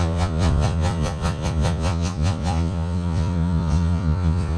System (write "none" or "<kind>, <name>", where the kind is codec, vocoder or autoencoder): vocoder, Vocos